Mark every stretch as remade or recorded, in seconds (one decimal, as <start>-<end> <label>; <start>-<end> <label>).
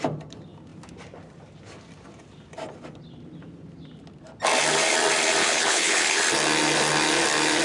0.0-5.4 recorded; 5.4-6.2 remade; 6.2-7.6 recorded